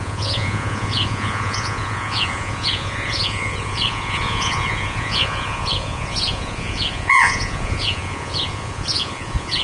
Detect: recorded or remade remade